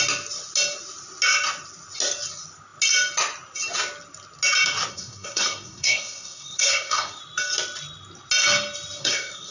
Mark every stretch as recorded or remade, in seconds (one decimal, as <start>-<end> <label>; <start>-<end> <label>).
0.0-4.9 recorded; 4.9-7.2 remade; 7.2-9.0 recorded; 9.0-9.5 remade